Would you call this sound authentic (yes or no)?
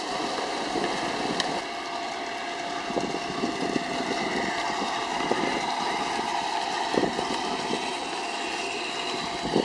yes